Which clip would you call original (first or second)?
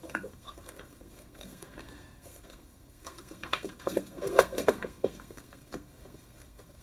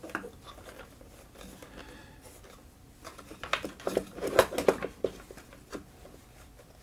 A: second